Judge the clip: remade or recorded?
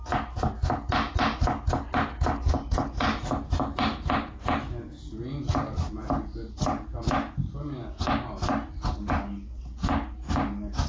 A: recorded